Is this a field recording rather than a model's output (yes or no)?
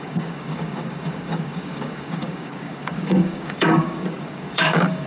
no